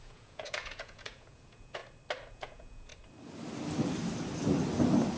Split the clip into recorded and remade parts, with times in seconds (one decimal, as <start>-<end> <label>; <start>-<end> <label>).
0.0-1.8 remade; 1.8-2.3 recorded; 2.3-2.9 remade; 2.9-5.2 recorded